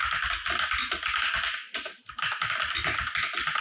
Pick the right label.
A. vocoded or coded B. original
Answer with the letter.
B